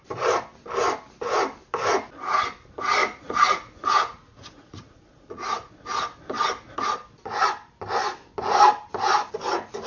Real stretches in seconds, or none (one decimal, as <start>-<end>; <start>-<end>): 0.0-3.0; 5.7-9.9